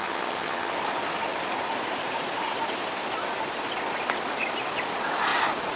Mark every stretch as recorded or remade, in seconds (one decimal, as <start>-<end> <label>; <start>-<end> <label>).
0.0-0.7 remade; 0.7-5.8 recorded

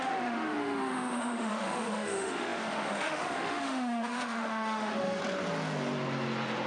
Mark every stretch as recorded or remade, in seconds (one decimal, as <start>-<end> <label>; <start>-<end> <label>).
0.0-5.2 remade; 5.2-6.7 recorded

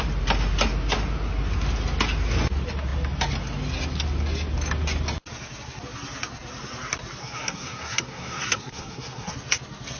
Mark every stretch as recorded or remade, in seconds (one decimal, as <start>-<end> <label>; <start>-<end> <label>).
0.0-7.2 recorded; 7.2-9.3 remade; 9.3-10.0 recorded

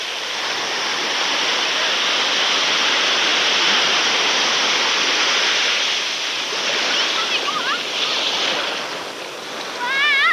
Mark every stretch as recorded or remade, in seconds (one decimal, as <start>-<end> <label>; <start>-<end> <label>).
0.0-10.3 recorded

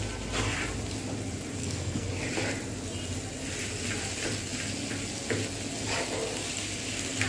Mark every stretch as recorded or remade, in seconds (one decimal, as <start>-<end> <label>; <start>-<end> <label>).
0.0-1.6 recorded; 1.6-2.1 remade; 2.1-7.3 recorded